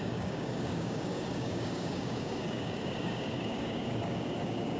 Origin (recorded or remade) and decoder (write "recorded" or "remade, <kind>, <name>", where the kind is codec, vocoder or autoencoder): remade, codec, DAC